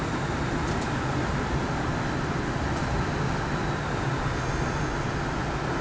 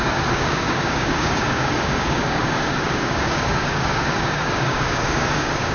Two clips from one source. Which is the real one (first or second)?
first